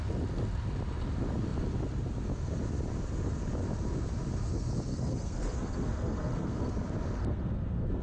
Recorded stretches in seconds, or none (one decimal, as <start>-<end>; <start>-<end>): 0.0-4.9; 6.7-7.2